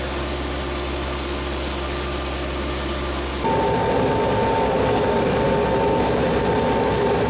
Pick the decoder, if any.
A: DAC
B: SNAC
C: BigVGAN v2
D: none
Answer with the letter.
D